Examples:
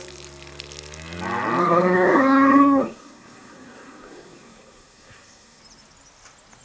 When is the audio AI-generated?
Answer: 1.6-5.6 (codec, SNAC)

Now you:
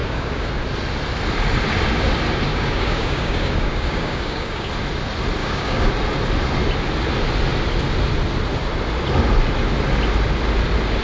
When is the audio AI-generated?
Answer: 0.0-0.5 (codec, DAC); 2.5-4.7; 5.4-5.9

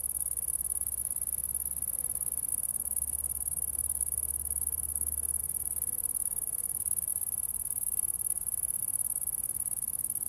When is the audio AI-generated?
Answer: 0.0-1.0 (autoencoder, DAC-VAE); 2.5-10.3

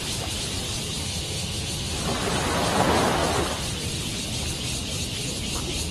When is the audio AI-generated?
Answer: 1.0-2.0 (autoencoder, DAC-VAE)

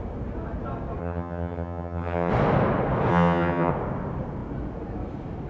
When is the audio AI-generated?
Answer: 1.0-2.3 (vocoder, HiFi-GAN); 3.1-3.7

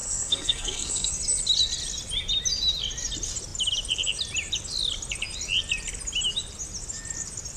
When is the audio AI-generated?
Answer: 0.0-1.1 (codec, SNAC)